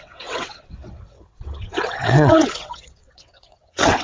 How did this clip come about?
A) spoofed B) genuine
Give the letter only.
A